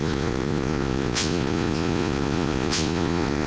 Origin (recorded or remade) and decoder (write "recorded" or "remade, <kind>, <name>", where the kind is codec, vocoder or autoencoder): remade, vocoder, Vocos